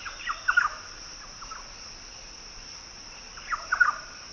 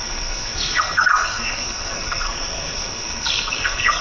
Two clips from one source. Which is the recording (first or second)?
first